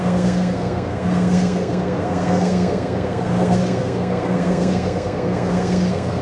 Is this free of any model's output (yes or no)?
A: no